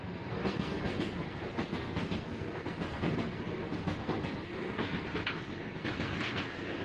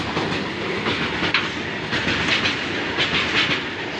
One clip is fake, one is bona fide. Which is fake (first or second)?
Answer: first